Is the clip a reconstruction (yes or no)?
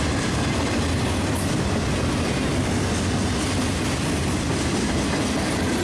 no